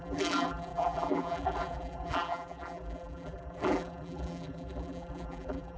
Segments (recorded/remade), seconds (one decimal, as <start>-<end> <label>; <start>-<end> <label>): 0.0-5.8 remade